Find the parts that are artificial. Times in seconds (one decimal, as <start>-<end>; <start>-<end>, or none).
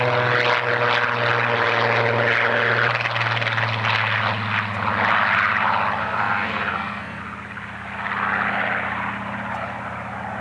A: 6.0-7.2